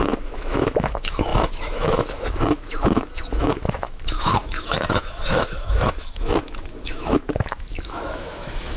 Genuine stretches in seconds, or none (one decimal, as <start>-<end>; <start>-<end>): none